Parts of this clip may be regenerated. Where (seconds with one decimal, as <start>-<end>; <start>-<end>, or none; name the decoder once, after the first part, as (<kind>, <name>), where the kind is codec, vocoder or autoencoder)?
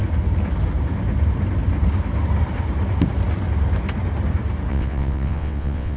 4.7-6.0 (vocoder, WaveNeXt)